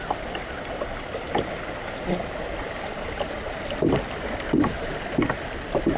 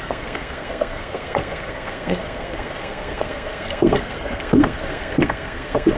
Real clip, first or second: first